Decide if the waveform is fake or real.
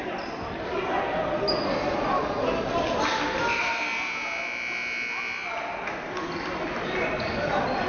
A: real